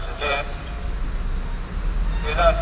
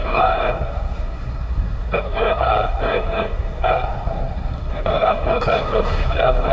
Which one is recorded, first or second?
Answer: first